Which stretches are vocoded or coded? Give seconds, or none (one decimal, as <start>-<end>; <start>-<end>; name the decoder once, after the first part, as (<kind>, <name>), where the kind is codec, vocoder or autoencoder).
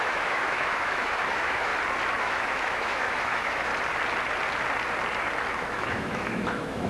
0.0-1.7 (autoencoder, DAC-VAE); 2.2-3.7; 5.5-6.9